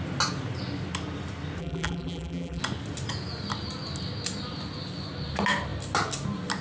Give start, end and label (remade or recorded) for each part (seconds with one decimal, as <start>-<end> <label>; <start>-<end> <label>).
0.0-1.6 recorded; 1.6-2.6 remade; 2.6-6.6 recorded